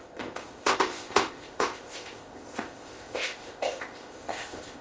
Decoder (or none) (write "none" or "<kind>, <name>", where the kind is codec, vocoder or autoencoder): codec, ZipCodec